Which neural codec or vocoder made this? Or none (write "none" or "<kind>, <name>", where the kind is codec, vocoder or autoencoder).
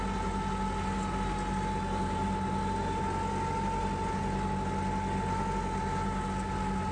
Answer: none